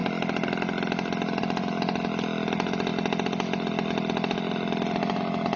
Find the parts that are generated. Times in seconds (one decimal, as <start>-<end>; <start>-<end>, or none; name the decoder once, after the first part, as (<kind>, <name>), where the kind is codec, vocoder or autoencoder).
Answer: none